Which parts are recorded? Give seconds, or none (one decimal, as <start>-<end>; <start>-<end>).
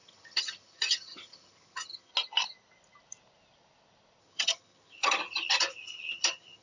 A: 2.1-4.2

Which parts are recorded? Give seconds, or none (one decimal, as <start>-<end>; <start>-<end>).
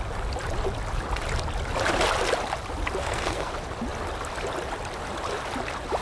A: 0.0-3.0; 3.5-6.0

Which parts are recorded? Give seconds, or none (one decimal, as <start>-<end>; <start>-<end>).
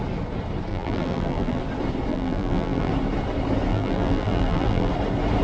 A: 0.0-0.7; 1.6-2.1; 2.9-3.7; 4.9-5.4